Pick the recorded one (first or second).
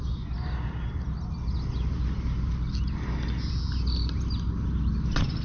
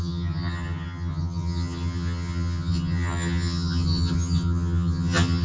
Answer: first